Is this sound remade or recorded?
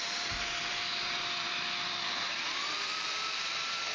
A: remade